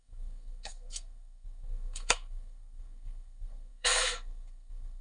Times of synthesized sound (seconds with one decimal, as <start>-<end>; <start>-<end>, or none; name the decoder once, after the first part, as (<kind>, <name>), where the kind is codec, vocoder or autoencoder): 0.0-5.0 (codec, SNAC)